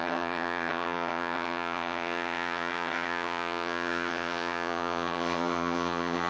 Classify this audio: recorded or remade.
remade